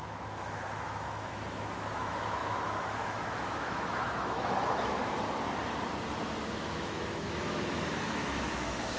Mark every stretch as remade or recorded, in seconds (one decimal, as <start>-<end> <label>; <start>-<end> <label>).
0.0-5.0 remade; 5.0-6.5 recorded; 6.5-9.0 remade